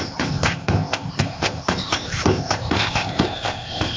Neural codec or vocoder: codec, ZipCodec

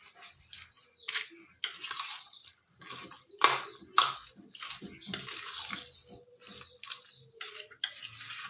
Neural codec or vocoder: none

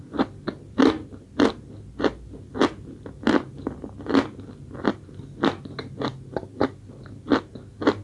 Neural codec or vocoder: none